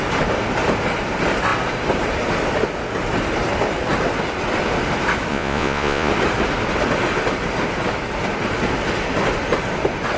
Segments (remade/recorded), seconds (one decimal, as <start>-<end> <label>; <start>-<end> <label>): 0.0-5.3 recorded; 5.3-6.1 remade; 6.1-10.2 recorded